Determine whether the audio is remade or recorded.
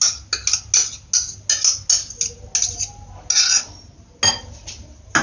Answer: recorded